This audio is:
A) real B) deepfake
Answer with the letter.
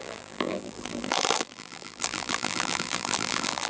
B